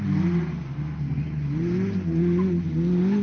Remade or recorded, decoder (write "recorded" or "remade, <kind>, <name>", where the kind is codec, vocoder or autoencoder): recorded